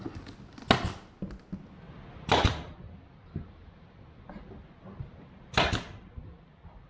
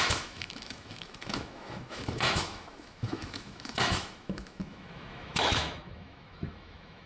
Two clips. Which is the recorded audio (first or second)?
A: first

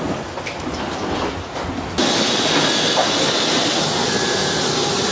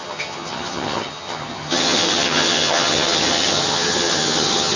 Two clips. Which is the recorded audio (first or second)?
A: first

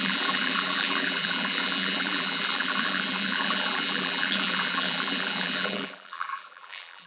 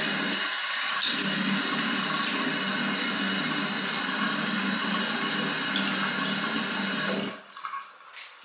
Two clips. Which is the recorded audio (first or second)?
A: second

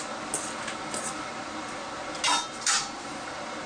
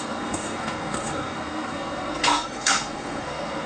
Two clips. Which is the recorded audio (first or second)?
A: first